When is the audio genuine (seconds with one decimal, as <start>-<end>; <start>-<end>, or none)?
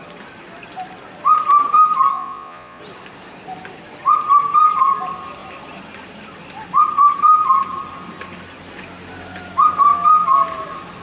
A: 0.0-2.1; 2.8-11.0